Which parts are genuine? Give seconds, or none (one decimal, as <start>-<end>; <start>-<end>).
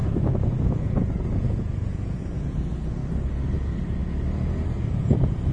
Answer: 0.0-0.6; 3.0-3.5; 4.0-4.9